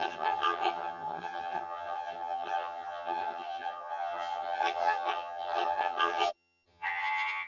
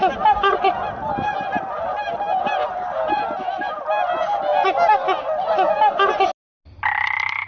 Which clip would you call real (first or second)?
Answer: second